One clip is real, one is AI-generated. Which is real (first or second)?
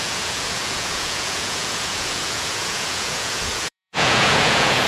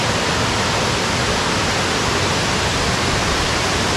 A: second